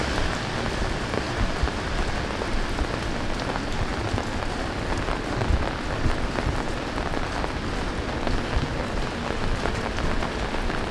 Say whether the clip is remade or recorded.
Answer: recorded